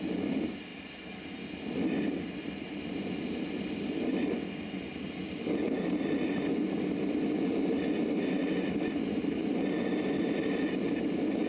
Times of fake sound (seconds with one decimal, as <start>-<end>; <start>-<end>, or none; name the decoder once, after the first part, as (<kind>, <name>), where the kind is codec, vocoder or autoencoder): none